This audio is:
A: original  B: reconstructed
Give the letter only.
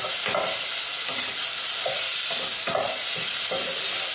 A